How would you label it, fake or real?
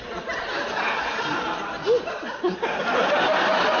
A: real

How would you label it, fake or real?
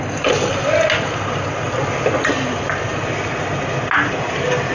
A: real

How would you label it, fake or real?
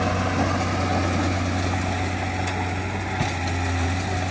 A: real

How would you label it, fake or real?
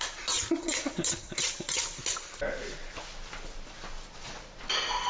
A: real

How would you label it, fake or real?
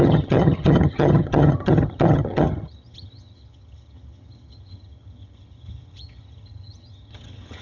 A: fake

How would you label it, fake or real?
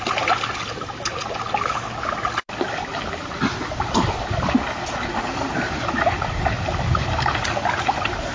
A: real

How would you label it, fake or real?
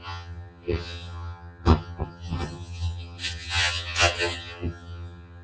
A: fake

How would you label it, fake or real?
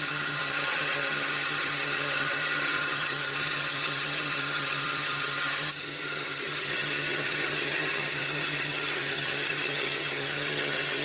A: fake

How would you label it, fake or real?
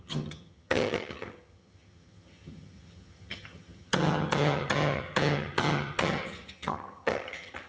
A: fake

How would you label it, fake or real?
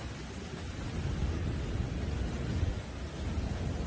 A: real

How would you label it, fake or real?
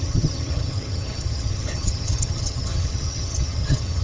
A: fake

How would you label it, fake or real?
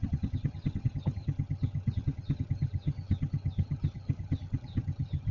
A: fake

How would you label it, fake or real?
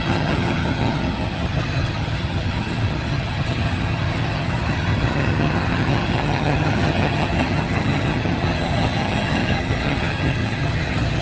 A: fake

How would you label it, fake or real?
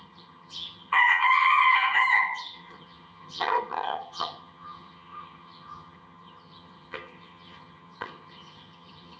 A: fake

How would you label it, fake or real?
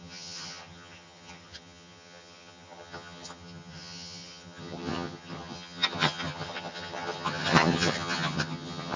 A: fake